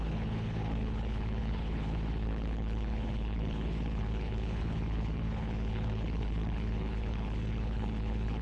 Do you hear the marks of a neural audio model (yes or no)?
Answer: yes